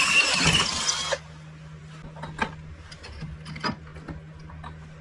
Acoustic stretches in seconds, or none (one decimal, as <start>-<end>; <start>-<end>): 0.0-5.0